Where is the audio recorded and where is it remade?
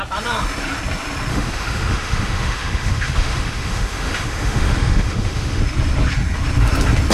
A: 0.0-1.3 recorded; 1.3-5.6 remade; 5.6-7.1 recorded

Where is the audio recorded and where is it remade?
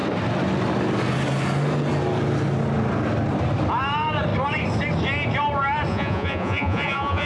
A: 0.0-5.9 recorded; 5.9-7.3 remade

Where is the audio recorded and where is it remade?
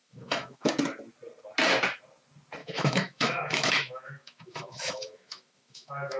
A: 0.0-0.7 remade; 0.7-2.6 recorded; 2.6-6.2 remade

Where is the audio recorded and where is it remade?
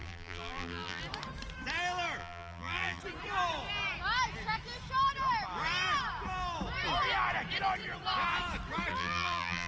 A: 0.0-1.0 remade; 1.0-2.2 recorded; 2.2-3.0 remade; 3.0-8.9 recorded; 8.9-9.7 remade